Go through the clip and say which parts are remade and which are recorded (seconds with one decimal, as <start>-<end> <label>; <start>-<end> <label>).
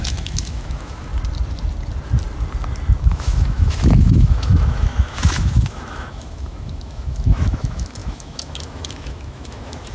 0.0-1.1 remade; 1.1-3.0 recorded; 3.0-9.9 remade